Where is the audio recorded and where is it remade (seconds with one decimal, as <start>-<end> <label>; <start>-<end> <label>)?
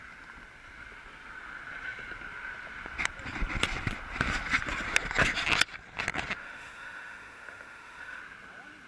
0.0-6.4 recorded; 6.4-8.2 remade; 8.2-8.9 recorded